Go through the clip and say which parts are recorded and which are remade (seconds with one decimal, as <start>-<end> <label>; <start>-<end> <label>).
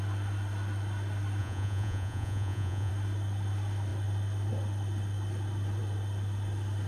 0.0-1.4 recorded; 1.4-2.9 remade; 2.9-6.9 recorded